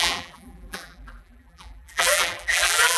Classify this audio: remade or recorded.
remade